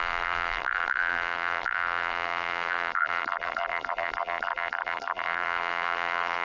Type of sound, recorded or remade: remade